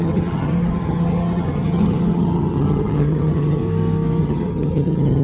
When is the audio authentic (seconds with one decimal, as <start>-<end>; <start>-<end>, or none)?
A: 3.6-4.2